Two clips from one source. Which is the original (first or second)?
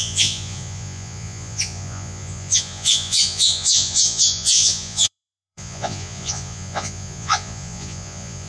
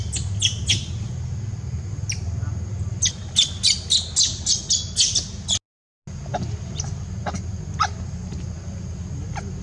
second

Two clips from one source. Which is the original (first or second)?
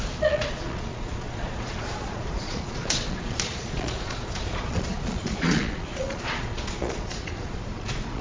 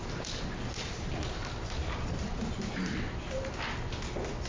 second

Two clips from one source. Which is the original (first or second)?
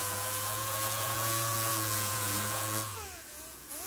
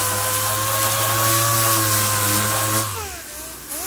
second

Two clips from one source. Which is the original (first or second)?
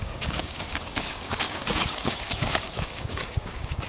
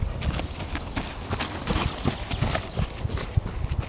second